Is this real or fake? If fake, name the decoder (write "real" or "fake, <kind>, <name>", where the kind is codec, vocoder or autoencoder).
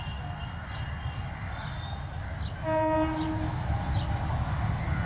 real